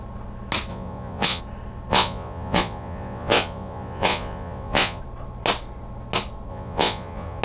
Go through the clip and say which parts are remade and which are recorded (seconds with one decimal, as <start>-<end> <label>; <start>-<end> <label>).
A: 0.0-0.7 recorded; 0.7-1.4 remade; 1.4-1.9 recorded; 1.9-5.0 remade; 5.0-6.5 recorded; 6.5-7.4 remade